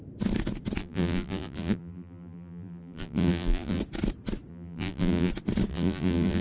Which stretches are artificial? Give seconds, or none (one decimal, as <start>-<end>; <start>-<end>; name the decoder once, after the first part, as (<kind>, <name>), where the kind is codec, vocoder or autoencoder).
0.8-3.8 (vocoder, BigVGAN v2); 4.5-5.3; 5.7-6.4